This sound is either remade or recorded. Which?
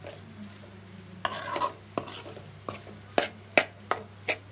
recorded